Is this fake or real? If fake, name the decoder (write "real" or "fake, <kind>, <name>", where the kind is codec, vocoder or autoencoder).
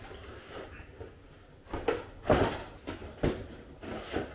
real